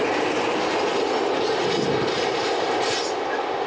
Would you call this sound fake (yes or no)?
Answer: no